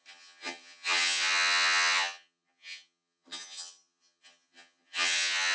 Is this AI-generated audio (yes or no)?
yes